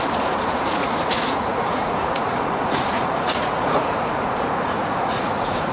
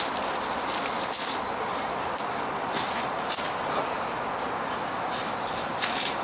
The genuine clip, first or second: second